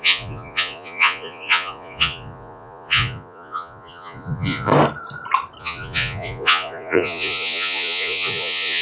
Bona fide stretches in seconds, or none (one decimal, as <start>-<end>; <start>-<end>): 4.7-5.6